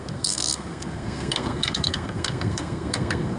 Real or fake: fake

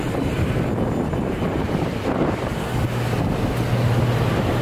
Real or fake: real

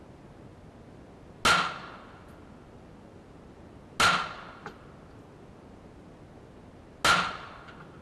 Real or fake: real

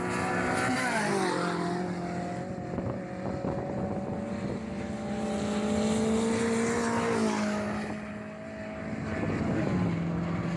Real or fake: real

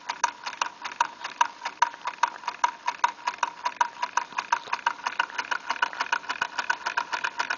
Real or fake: real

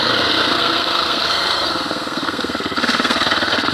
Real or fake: fake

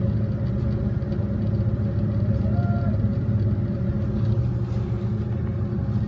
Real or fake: real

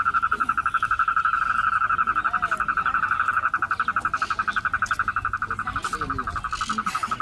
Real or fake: real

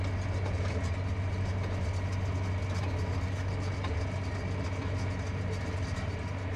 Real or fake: real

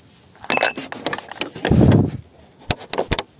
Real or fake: real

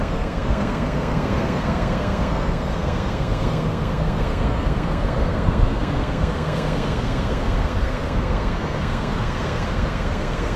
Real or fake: fake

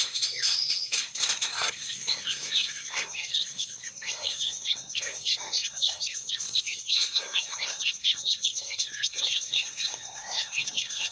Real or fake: fake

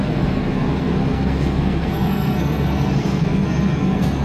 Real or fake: fake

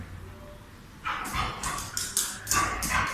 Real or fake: real